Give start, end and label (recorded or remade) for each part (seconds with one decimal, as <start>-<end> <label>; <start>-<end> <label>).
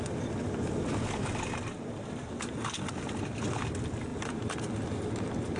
0.0-5.6 recorded